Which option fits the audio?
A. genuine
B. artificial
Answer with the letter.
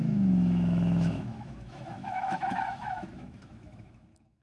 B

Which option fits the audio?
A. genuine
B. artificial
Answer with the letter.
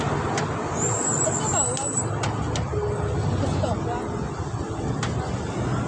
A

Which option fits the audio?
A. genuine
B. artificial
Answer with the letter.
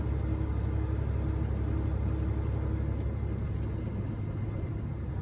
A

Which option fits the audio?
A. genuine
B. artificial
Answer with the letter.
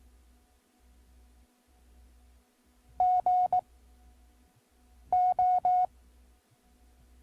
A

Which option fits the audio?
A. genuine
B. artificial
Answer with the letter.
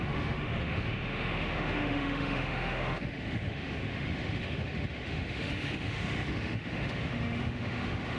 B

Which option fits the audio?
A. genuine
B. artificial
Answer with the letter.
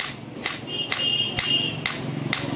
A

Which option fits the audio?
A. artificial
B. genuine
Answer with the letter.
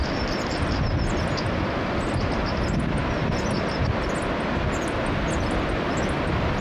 B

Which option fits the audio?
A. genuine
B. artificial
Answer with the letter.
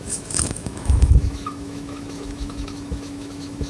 B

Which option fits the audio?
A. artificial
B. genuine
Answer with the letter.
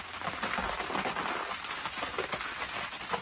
B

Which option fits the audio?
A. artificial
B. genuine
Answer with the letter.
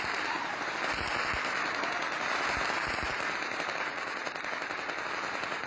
B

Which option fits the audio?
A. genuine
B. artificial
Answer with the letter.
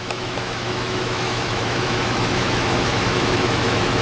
B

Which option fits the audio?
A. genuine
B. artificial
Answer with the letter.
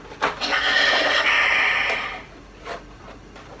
A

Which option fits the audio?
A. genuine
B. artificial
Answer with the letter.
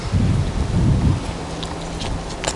A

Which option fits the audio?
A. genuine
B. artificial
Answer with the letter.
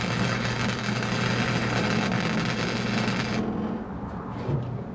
A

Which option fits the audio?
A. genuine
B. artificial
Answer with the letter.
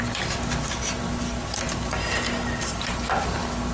A